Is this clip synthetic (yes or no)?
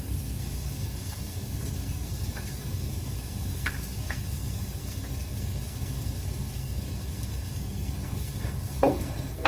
yes